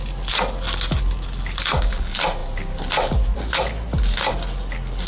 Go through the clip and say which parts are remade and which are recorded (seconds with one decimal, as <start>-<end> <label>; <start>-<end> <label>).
0.0-5.1 recorded